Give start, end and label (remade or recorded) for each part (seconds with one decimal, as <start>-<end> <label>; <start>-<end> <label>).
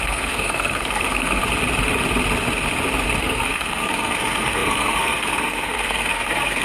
0.0-1.4 remade; 1.4-3.2 recorded; 3.2-6.6 remade